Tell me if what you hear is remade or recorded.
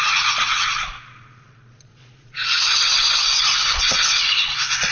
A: remade